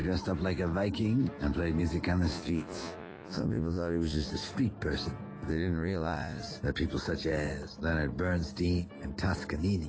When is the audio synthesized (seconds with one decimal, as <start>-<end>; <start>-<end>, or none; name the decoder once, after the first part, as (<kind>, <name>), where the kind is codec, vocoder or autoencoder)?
2.3-4.3 (vocoder, Vocos); 5.5-6.4